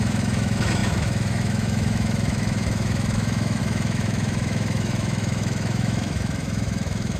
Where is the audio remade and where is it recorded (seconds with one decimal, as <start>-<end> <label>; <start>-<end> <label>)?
0.0-7.2 remade